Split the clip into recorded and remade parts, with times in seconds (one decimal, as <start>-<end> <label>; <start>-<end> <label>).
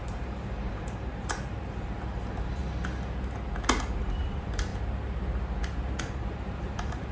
0.0-2.6 remade; 2.6-4.0 recorded; 4.0-4.7 remade; 4.7-6.0 recorded; 6.0-7.1 remade